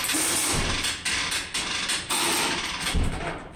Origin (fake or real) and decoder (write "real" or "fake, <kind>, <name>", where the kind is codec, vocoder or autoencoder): real